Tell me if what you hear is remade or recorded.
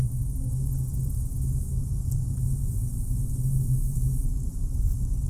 recorded